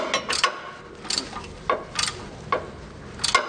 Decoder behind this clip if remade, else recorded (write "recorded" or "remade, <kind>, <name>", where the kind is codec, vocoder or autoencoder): recorded